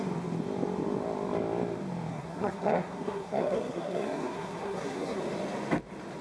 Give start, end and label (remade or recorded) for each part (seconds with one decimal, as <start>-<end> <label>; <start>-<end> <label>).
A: 0.0-2.1 recorded; 2.1-5.2 remade; 5.2-6.2 recorded